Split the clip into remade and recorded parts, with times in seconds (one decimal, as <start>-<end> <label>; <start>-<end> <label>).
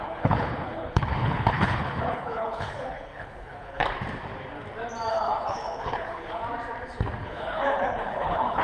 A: 0.0-3.8 remade; 3.8-5.1 recorded; 5.1-6.4 remade; 6.4-7.2 recorded; 7.2-8.6 remade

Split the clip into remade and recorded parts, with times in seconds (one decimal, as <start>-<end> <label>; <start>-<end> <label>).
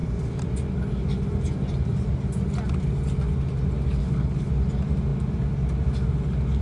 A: 0.0-4.0 recorded; 4.0-4.5 remade; 4.5-6.6 recorded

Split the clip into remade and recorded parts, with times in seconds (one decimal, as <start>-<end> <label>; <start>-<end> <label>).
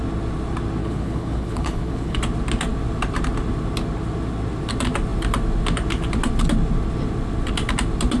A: 0.0-0.8 recorded; 0.8-2.2 remade; 2.2-8.2 recorded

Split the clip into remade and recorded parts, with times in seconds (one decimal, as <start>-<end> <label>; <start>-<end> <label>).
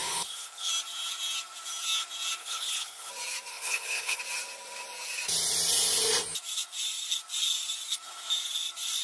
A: 0.0-0.7 remade; 0.7-2.4 recorded; 2.4-3.1 remade; 3.1-3.5 recorded; 3.5-4.2 remade; 4.2-9.0 recorded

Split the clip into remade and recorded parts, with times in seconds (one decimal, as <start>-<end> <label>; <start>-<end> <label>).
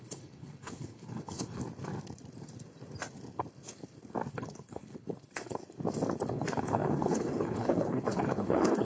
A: 0.0-1.6 remade; 1.6-4.3 recorded; 4.3-5.6 remade; 5.6-6.3 recorded; 6.3-8.8 remade